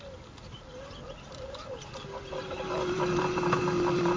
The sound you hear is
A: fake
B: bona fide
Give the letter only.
B